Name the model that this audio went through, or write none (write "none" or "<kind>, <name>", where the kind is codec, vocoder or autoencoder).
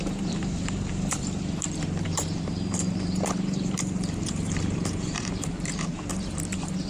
vocoder, BigVGAN v2